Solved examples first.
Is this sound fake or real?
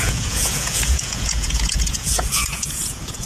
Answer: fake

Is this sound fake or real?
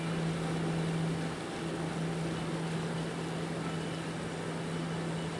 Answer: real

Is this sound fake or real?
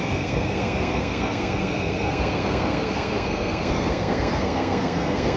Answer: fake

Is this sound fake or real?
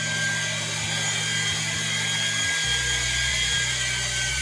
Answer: real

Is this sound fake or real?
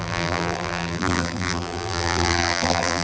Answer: fake